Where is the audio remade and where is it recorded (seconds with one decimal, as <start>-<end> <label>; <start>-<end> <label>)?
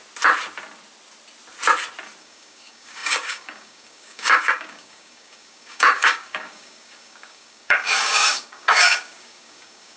0.0-2.2 recorded; 2.2-10.0 remade